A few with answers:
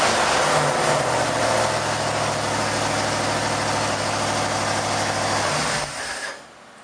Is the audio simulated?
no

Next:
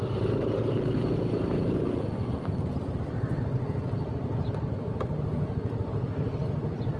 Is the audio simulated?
no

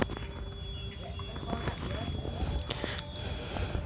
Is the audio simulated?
no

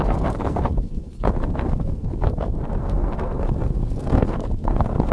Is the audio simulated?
yes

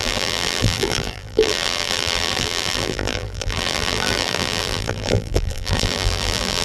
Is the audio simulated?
yes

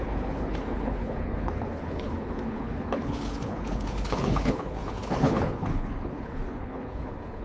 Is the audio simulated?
yes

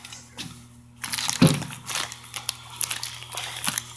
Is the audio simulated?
no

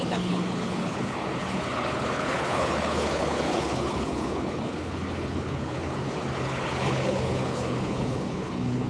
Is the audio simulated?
yes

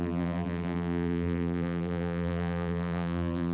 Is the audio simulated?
yes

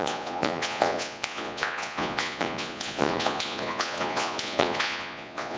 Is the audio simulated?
yes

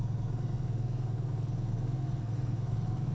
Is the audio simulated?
yes